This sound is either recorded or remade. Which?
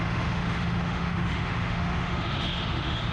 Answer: remade